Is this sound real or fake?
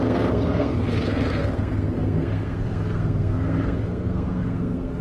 fake